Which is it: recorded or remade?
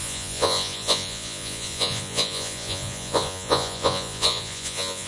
remade